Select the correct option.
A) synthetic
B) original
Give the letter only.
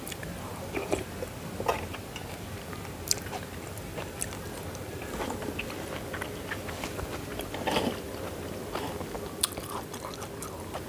B